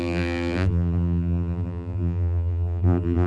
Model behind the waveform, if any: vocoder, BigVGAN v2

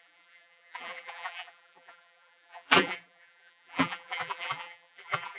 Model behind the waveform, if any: vocoder, BigVGAN v2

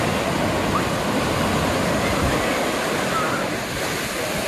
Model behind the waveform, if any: none